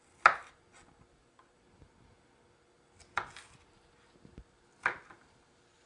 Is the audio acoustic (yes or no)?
yes